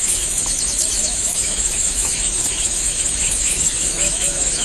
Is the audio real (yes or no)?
no